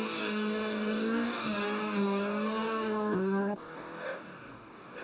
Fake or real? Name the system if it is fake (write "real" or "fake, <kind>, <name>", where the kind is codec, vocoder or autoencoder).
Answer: fake, codec, DAC